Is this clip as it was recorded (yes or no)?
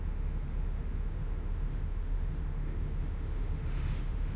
no